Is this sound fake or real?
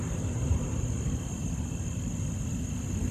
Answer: real